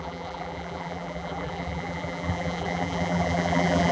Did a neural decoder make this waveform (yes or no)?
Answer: yes